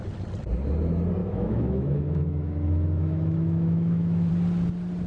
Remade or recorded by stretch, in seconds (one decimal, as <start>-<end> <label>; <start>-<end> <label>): 0.0-1.2 recorded; 1.2-4.3 remade; 4.3-5.1 recorded